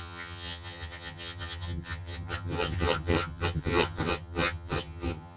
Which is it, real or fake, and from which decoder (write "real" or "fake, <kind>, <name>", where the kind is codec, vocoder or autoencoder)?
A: fake, vocoder, HiFi-GAN